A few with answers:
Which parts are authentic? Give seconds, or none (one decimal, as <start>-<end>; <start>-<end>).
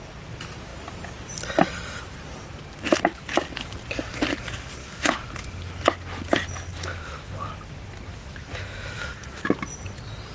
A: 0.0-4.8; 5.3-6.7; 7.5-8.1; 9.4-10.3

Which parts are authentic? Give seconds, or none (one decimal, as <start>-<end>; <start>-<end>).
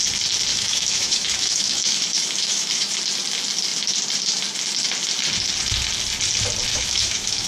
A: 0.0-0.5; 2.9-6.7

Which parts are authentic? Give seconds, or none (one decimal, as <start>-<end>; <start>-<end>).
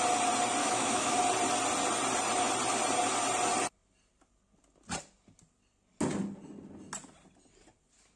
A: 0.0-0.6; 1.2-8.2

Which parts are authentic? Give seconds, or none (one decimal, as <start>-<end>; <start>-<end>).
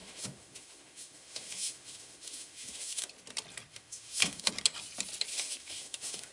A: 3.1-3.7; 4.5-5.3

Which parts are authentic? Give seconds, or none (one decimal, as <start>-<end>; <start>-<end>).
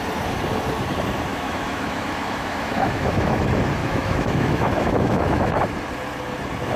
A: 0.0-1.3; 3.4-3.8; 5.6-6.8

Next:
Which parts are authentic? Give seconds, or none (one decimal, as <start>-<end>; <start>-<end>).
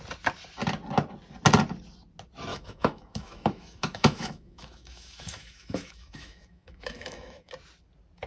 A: 0.0-2.5; 7.5-8.3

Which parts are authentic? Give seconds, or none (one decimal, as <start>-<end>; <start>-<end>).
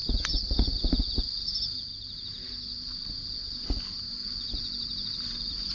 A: 0.0-5.7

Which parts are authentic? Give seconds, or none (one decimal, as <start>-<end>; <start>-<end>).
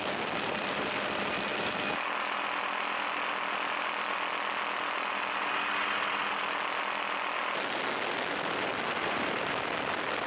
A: 0.0-10.3